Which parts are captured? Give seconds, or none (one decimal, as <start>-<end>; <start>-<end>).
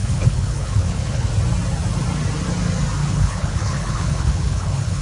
1.3-3.0